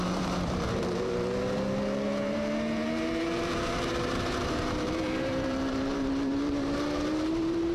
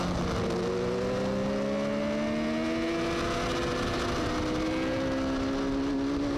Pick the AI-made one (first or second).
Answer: first